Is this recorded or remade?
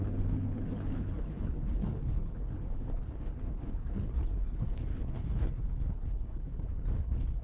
remade